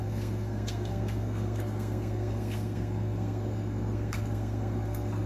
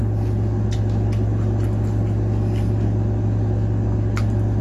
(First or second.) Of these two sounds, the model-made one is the first